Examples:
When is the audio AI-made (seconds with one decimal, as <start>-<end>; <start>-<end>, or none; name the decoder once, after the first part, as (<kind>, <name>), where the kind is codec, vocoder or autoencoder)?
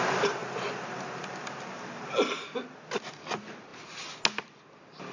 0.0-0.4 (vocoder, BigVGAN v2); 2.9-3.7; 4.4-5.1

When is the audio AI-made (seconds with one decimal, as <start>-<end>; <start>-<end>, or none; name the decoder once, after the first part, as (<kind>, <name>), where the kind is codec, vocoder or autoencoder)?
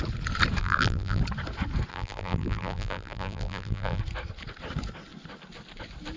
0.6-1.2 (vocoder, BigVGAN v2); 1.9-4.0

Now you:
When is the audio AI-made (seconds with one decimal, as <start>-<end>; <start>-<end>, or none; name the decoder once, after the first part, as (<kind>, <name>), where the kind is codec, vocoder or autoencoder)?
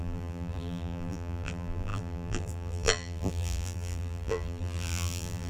0.0-5.5 (vocoder, BigVGAN v2)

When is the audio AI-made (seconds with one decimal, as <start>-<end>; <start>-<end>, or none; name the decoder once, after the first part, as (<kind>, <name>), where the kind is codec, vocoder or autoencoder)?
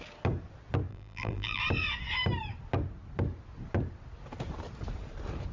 0.9-1.6 (vocoder, BigVGAN v2)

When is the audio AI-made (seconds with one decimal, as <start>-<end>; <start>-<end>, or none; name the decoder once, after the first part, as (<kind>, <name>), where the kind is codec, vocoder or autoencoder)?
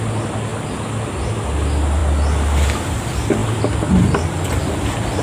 none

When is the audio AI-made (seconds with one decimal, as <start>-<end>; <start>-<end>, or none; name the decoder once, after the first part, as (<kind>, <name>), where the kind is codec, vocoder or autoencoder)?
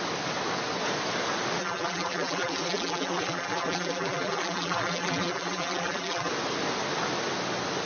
1.6-6.3 (vocoder, BigVGAN v2)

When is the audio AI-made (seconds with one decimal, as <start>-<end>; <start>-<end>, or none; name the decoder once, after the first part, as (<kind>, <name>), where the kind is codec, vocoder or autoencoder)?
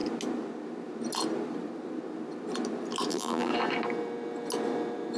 3.1-3.5 (vocoder, BigVGAN v2)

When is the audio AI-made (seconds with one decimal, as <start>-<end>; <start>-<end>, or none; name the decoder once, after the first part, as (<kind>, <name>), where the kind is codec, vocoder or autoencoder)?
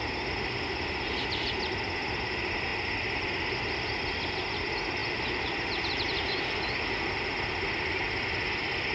5.0-6.2 (vocoder, BigVGAN v2)